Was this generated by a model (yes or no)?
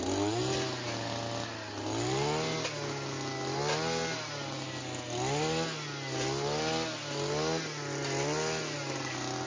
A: no